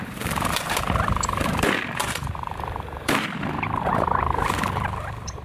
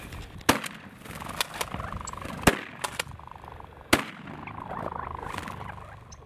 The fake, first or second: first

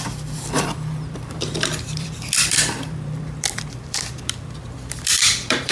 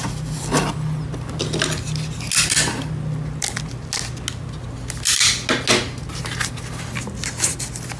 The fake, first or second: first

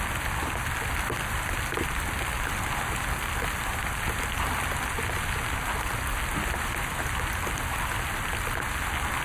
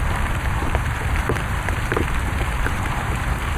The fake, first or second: second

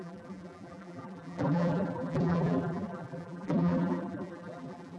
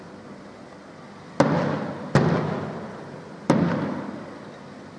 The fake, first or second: first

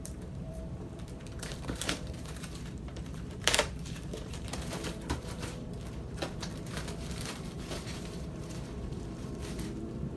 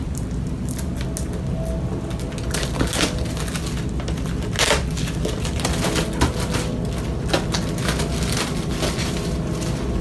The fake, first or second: first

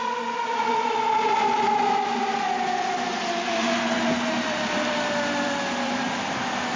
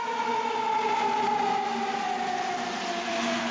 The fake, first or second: first